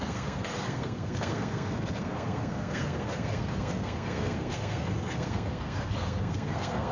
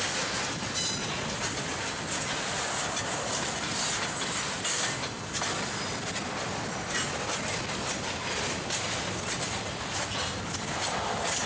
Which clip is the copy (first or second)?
first